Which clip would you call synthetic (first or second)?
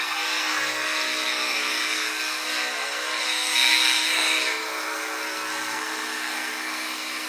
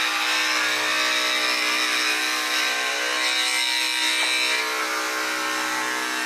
first